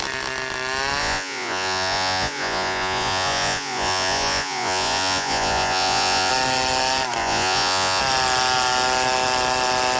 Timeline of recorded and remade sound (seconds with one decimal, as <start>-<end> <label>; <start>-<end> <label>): 0.0-1.0 recorded; 1.0-6.3 remade; 6.3-7.2 recorded; 7.2-8.0 remade; 8.0-10.0 recorded